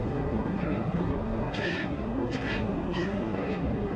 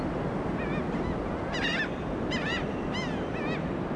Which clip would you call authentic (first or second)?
second